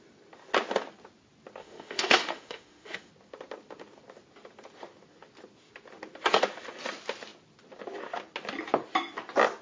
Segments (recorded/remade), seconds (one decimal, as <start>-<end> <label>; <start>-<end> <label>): 0.0-1.6 recorded; 1.6-3.1 remade; 3.1-9.6 recorded

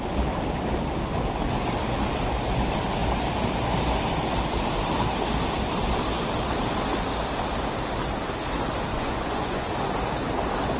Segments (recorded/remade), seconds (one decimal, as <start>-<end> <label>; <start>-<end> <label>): 0.0-8.9 recorded; 8.9-9.7 remade; 9.7-10.8 recorded

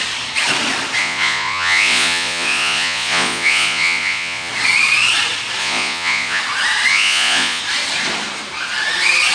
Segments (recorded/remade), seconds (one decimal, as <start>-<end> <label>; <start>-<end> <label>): 0.0-1.0 recorded; 1.0-4.5 remade; 4.5-5.6 recorded; 5.6-6.4 remade; 6.4-6.9 recorded; 6.9-7.6 remade; 7.6-9.3 recorded